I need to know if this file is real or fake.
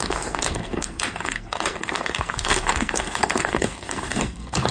fake